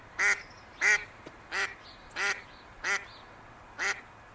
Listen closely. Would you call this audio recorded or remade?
recorded